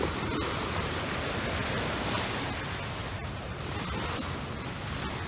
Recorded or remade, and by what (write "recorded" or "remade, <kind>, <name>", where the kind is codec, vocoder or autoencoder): recorded